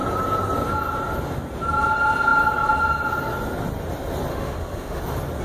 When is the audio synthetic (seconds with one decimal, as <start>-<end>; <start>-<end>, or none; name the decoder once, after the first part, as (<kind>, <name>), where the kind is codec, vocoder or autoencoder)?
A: 4.3-5.0 (autoencoder, DAC-VAE)